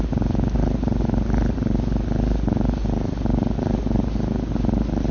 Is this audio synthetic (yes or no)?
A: no